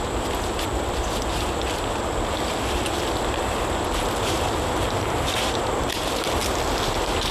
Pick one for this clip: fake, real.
real